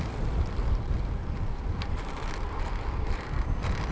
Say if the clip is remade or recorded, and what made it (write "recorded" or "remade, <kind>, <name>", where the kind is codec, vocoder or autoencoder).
recorded